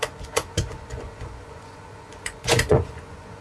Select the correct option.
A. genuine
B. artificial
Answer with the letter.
B